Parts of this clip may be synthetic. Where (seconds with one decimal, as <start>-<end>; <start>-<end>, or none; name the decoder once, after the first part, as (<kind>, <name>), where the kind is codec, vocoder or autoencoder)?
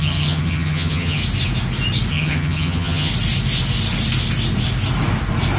0.0-1.2 (vocoder, HiFi-GAN); 2.1-3.1